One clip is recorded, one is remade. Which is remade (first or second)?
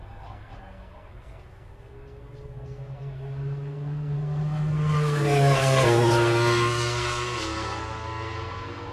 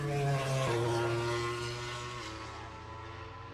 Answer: first